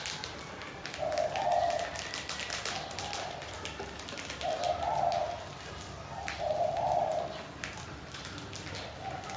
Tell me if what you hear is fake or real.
real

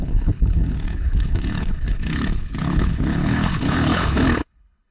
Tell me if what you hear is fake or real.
fake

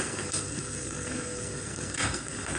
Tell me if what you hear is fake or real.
fake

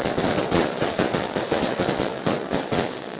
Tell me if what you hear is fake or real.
fake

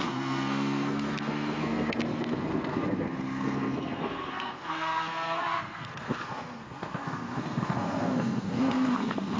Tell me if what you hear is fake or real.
fake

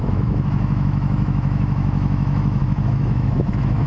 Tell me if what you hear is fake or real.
fake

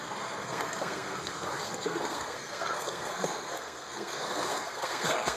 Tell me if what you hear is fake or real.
fake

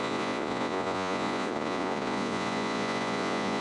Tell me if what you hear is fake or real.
fake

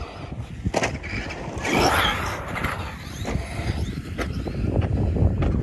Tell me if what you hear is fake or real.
real